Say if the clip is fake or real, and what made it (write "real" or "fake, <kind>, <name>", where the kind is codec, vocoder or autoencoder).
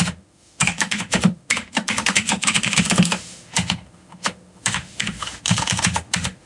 fake, autoencoder, DAC-VAE